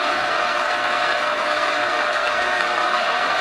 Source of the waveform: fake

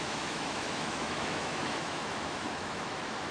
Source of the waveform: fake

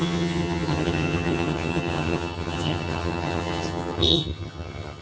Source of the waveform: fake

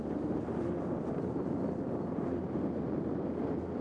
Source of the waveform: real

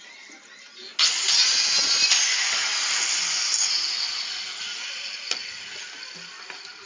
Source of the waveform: real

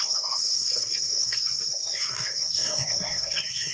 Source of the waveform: fake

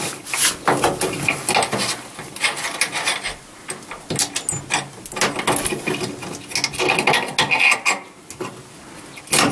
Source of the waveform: real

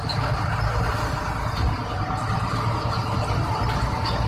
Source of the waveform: real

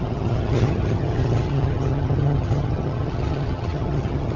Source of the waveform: fake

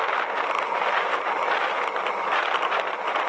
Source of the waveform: real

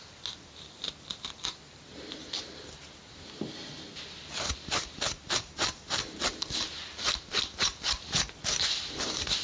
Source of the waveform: real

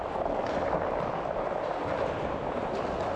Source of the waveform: real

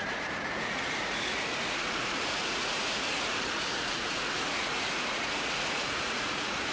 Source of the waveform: fake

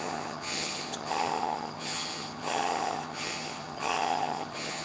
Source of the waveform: fake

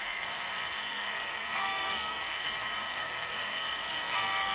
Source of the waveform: fake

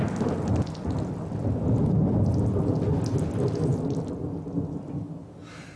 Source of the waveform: real